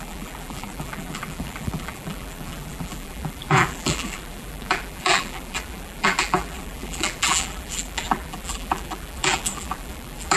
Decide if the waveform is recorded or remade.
remade